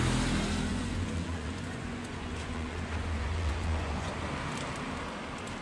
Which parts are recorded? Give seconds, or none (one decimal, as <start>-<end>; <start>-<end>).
0.0-0.7; 4.1-5.6